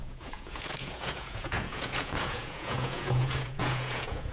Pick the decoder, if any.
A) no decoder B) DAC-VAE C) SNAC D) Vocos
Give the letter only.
D